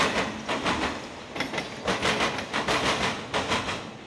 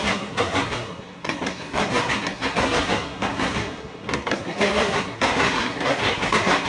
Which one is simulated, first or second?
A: second